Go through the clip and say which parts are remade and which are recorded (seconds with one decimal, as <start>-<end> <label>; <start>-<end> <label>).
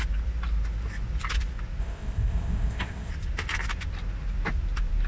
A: 0.0-1.8 recorded; 1.8-3.1 remade; 3.1-5.1 recorded